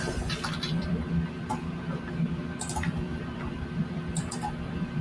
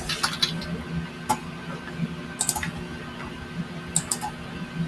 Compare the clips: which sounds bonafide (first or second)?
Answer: second